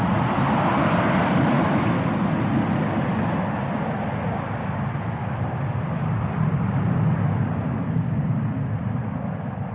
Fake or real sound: real